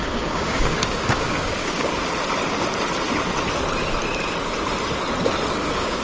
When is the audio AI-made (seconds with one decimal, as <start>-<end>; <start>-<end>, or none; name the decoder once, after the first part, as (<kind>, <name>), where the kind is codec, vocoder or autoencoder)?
0.0-1.9 (codec, DAC); 5.5-6.0